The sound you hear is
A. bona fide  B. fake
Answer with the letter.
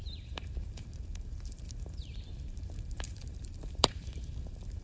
B